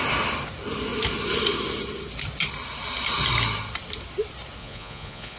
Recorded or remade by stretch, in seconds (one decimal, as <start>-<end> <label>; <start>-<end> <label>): 0.0-4.6 recorded; 4.6-5.4 remade